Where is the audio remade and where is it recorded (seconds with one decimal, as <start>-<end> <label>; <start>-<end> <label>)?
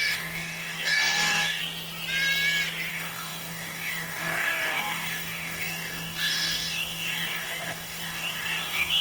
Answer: 0.0-1.6 remade; 1.6-2.9 recorded; 2.9-9.0 remade